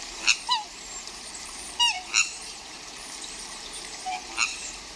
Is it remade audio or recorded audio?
remade